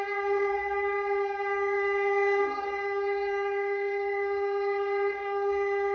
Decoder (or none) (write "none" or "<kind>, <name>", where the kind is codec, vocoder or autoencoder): codec, DAC